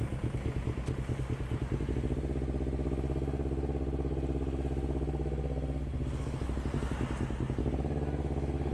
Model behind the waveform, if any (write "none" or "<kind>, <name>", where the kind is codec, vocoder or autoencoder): none